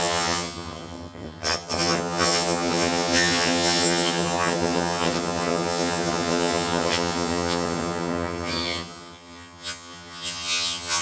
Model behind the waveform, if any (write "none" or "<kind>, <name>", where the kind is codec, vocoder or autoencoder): vocoder, HiFi-GAN